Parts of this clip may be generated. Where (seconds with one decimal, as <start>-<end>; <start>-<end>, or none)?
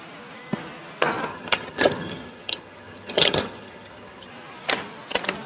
1.3-4.3